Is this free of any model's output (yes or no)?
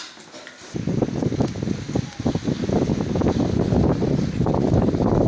yes